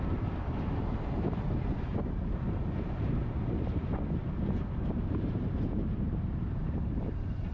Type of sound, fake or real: fake